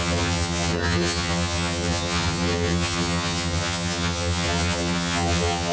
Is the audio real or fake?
fake